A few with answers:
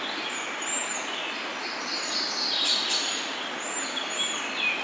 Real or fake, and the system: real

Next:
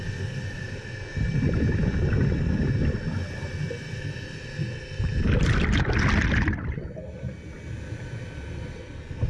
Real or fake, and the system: real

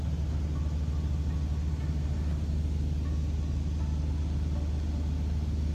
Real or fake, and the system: real